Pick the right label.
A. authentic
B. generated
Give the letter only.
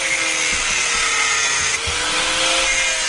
A